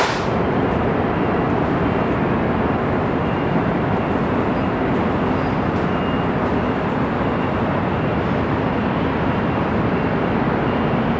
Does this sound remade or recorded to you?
recorded